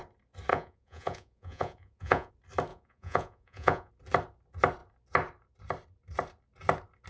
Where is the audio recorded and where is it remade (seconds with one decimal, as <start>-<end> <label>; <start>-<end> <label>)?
0.0-0.5 recorded; 0.5-2.3 remade; 2.3-2.7 recorded; 2.7-3.9 remade; 3.9-7.1 recorded